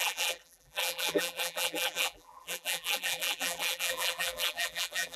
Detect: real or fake fake